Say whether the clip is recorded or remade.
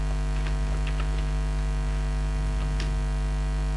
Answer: recorded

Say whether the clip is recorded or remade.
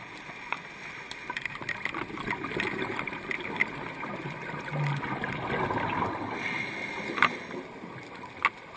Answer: recorded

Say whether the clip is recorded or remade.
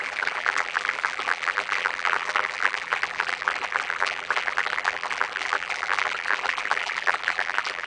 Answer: remade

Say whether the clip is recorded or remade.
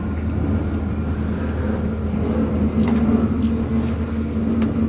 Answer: recorded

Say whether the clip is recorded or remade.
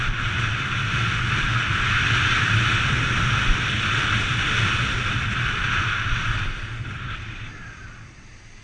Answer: recorded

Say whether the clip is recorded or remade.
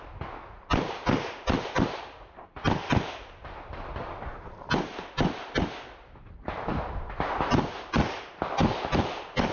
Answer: recorded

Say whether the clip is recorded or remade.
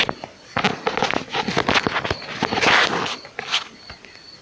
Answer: recorded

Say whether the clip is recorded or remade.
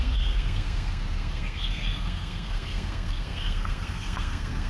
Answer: remade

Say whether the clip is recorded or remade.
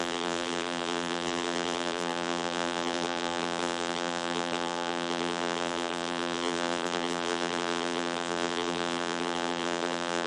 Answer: remade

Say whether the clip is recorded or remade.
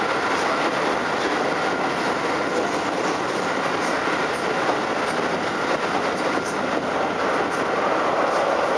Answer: recorded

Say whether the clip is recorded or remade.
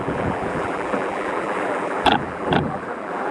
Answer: remade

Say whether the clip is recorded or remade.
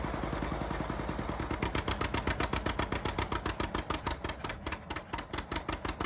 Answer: recorded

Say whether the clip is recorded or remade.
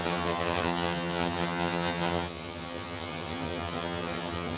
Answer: remade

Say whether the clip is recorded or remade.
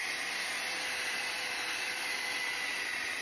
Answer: recorded